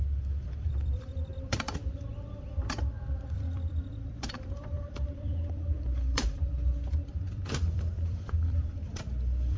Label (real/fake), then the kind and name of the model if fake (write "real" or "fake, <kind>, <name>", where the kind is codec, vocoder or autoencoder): fake, vocoder, BigVGAN v2